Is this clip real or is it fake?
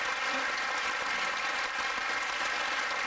real